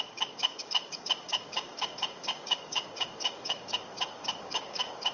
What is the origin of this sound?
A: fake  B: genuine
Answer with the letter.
A